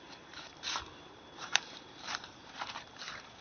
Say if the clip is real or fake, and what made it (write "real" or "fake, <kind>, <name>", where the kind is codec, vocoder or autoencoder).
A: fake, vocoder, BigVGAN v2